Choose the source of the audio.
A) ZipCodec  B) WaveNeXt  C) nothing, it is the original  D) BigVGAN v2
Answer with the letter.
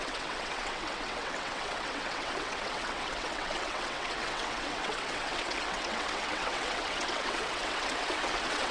B